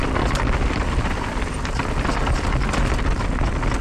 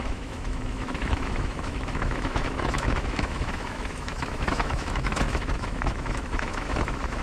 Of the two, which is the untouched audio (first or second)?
first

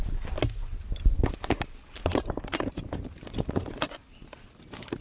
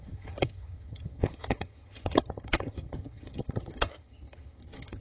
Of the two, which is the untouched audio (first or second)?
first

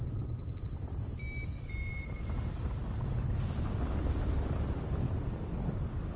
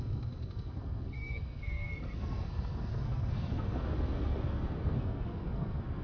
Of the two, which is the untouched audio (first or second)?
first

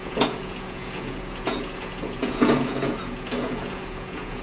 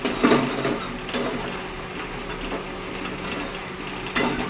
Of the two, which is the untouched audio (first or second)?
second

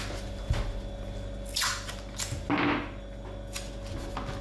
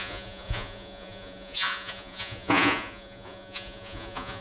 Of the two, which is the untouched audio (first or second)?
first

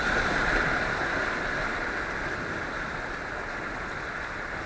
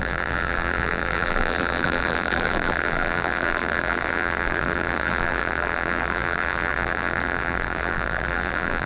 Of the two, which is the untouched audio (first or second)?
first